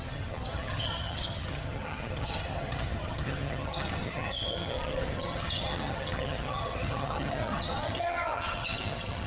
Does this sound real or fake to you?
fake